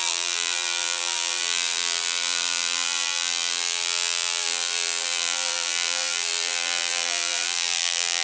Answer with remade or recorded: remade